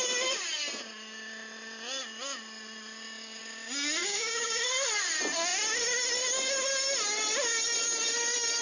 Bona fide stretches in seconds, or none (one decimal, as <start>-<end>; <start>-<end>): 0.0-4.0; 4.6-8.6

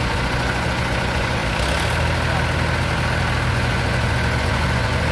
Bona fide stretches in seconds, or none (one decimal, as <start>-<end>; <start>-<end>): 1.4-3.5

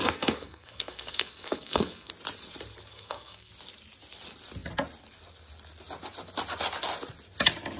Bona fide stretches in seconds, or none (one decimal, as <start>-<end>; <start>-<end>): 2.1-2.9; 3.5-7.8

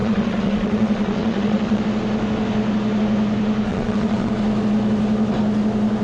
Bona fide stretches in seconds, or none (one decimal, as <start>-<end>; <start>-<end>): 1.8-3.7; 4.3-6.0

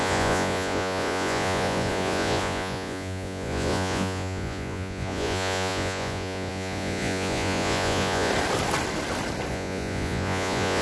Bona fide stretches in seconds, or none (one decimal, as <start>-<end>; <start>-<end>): 8.3-9.5